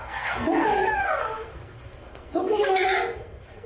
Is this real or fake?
fake